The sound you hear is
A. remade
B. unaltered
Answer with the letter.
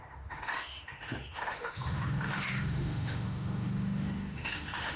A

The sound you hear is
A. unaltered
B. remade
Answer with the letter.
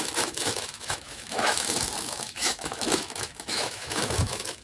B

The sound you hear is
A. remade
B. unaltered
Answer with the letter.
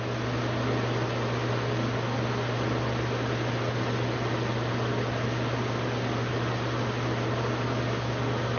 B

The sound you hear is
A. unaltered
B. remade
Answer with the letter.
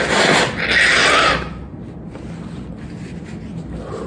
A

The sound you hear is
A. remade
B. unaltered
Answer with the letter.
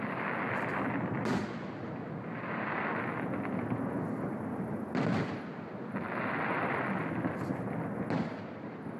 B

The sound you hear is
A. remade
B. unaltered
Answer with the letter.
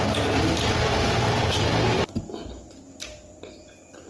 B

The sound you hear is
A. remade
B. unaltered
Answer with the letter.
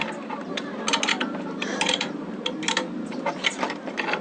B